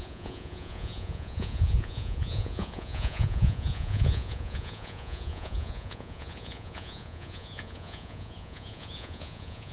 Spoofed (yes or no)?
yes